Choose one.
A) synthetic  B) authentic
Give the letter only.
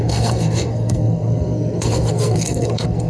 A